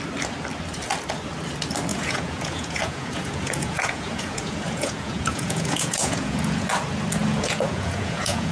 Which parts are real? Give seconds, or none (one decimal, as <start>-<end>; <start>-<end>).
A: 0.0-1.9; 6.7-7.2